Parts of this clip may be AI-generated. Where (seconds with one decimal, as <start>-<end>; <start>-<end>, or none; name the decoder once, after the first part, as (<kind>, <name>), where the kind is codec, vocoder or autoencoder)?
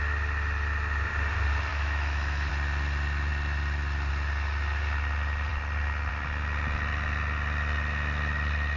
1.7-2.5 (autoencoder, DAC-VAE)